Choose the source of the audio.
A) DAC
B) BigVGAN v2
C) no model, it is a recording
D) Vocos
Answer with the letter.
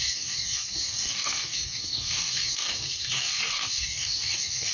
A